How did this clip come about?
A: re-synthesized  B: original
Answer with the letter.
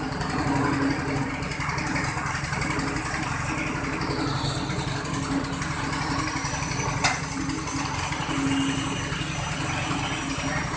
B